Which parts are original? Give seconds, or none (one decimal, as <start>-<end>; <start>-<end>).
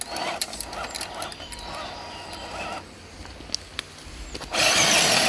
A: 0.0-5.3